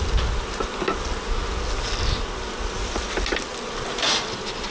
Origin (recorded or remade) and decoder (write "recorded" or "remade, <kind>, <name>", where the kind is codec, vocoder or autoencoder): recorded